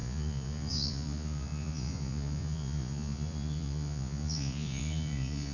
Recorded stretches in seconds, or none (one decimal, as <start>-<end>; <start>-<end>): none